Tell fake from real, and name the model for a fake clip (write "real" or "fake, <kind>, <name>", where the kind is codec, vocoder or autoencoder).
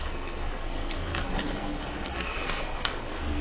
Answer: fake, codec, SNAC